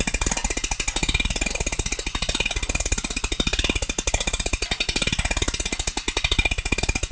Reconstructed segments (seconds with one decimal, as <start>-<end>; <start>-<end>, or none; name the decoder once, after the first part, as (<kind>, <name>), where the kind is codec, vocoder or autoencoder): none